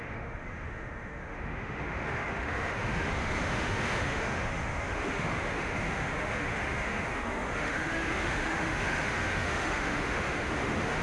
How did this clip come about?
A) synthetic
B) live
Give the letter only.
A